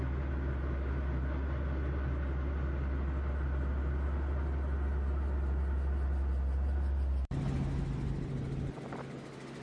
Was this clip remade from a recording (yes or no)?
no